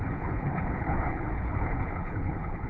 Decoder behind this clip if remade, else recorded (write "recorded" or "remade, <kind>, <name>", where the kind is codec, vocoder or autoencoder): remade, codec, HILCodec